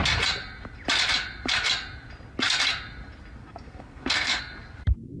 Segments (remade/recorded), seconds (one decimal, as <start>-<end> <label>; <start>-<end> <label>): 0.0-3.4 recorded; 3.4-4.4 remade; 4.4-5.2 recorded